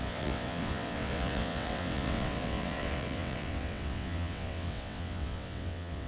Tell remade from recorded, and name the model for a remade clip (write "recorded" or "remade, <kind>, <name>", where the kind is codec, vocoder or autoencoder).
remade, vocoder, WaveNeXt